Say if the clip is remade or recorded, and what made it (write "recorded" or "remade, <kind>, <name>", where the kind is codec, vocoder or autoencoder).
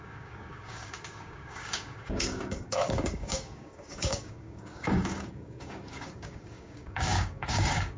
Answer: remade, codec, DAC